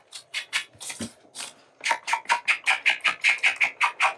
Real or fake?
real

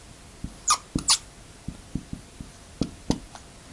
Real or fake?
real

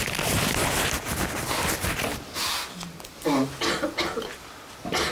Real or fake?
real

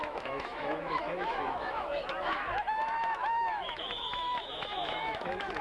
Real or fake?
fake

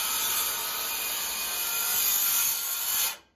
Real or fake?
real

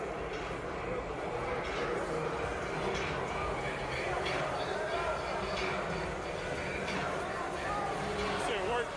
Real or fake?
real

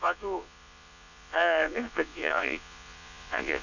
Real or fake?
fake